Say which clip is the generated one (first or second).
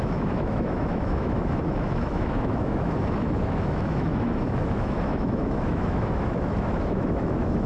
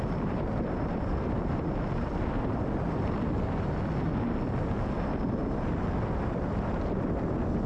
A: first